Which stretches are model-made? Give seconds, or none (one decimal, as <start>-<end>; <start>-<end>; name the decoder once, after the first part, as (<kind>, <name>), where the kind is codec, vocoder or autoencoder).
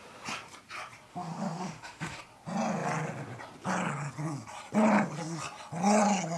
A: 1.1-2.2 (autoencoder, DAC-VAE)